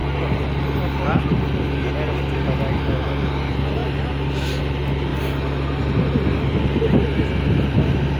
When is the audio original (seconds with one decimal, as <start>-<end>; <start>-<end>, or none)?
0.0-8.2